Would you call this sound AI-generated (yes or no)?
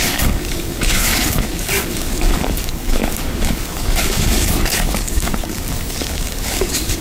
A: yes